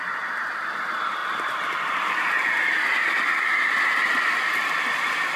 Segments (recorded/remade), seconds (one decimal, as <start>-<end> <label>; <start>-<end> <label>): 0.0-1.2 recorded; 1.2-4.4 remade; 4.4-5.4 recorded